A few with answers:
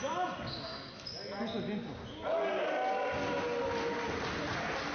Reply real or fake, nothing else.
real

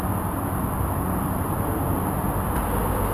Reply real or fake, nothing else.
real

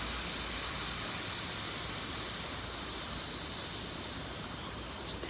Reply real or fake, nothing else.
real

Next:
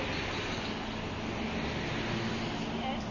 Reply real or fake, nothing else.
real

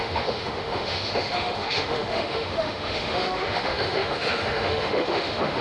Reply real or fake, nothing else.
fake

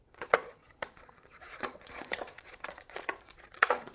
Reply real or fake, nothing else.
fake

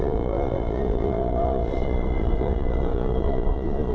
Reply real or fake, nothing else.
fake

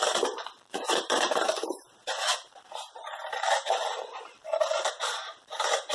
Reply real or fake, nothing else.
fake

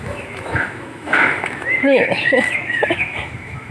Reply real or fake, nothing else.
fake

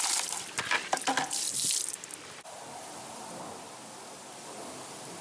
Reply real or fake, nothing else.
real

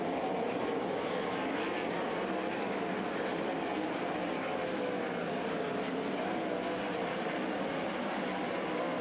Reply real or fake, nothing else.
real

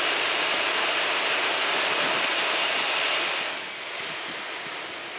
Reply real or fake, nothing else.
real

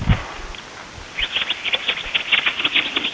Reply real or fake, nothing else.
real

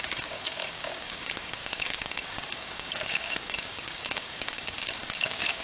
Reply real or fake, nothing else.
fake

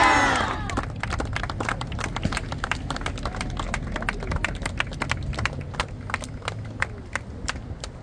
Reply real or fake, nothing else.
real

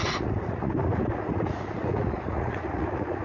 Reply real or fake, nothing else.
fake